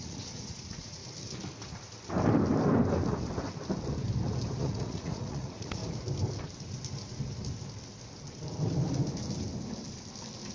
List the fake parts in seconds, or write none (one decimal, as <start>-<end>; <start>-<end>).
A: 0.0-1.0; 4.6-5.8